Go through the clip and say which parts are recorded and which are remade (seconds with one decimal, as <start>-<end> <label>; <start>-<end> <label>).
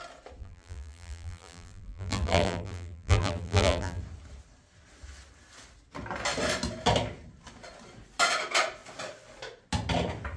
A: 0.0-0.4 recorded; 0.4-4.0 remade; 4.0-10.4 recorded